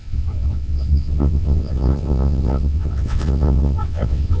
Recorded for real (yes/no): no